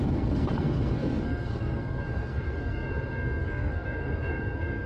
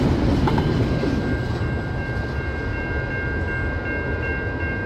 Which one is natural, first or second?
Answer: second